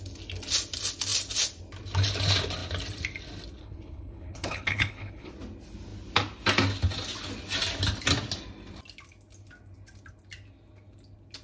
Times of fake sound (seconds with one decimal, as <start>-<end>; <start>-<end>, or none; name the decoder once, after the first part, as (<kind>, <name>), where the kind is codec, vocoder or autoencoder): 3.6-5.3 (codec, HILCodec)